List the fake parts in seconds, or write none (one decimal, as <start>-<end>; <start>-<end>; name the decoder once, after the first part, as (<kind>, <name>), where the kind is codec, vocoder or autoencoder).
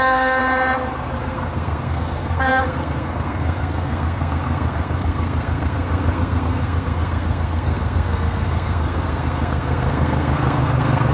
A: 0.0-0.4 (codec, SNAC); 1.2-11.1